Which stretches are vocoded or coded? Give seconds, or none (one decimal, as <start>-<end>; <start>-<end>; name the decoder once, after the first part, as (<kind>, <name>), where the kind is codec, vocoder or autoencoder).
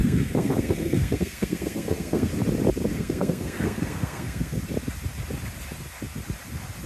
0.0-2.3 (codec, SNAC); 2.9-4.6